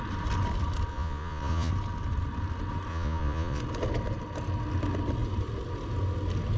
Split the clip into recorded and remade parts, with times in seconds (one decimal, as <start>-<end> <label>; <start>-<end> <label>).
0.0-0.9 recorded; 0.9-1.7 remade; 1.7-2.9 recorded; 2.9-3.6 remade; 3.6-6.6 recorded